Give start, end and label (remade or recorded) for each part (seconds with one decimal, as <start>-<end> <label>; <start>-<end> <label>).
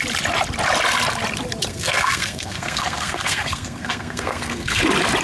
0.0-1.7 recorded; 1.7-4.8 remade; 4.8-5.2 recorded